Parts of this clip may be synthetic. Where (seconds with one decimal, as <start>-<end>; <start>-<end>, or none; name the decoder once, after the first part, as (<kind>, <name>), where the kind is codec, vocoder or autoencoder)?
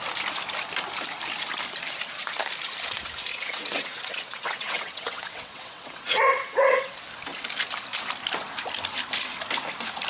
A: 3.3-7.0 (vocoder, WaveNeXt)